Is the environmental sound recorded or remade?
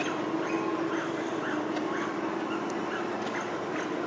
recorded